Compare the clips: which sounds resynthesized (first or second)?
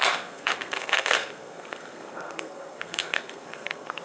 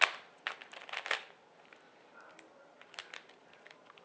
first